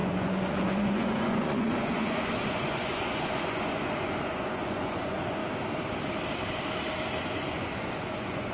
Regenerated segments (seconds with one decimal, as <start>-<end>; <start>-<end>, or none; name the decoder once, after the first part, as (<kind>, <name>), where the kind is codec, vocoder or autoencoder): 0.0-5.4 (vocoder, Vocos); 7.2-8.5